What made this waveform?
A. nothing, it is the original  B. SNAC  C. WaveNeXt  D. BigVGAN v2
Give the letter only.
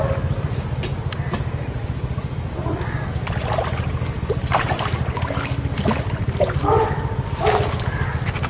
A